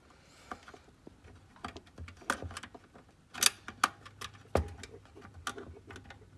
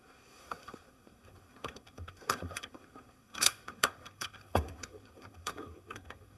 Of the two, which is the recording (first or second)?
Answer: first